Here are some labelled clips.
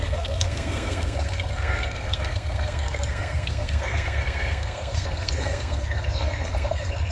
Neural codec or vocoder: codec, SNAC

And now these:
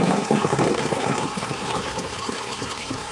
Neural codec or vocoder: codec, SNAC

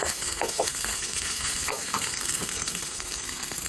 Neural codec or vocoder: codec, SNAC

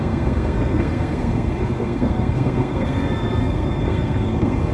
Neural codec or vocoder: codec, SNAC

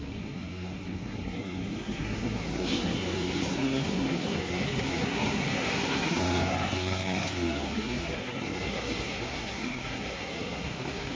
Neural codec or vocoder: codec, SNAC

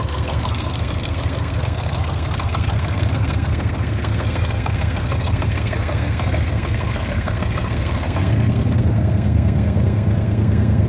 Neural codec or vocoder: codec, SNAC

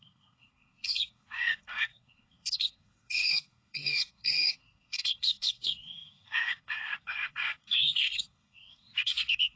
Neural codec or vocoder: codec, SNAC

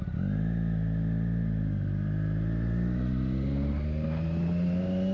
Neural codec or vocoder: none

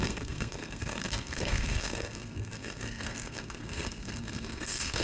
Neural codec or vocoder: codec, SNAC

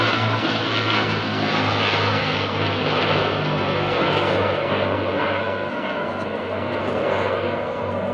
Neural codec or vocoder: codec, SNAC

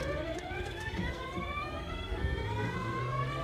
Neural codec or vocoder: codec, SNAC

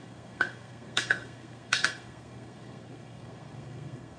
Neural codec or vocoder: codec, SNAC